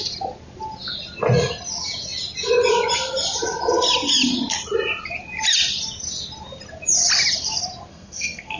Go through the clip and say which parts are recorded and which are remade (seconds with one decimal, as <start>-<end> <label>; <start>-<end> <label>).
0.0-7.9 recorded; 7.9-8.6 remade